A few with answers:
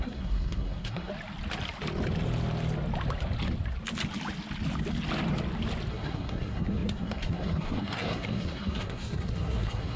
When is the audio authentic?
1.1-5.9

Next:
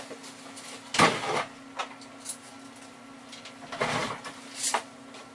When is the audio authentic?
0.0-5.3

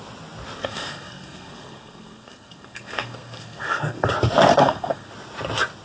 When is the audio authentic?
0.0-0.6; 4.1-4.5; 5.1-5.8

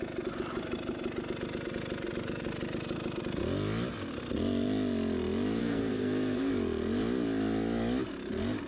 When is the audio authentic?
0.0-5.6; 6.5-8.7

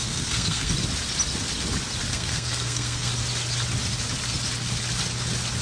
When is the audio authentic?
0.7-2.1; 3.1-5.6